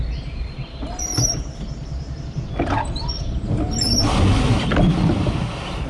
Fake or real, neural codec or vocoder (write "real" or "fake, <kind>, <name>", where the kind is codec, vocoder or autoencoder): real